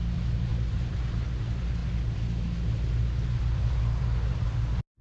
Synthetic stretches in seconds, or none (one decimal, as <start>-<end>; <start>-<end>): none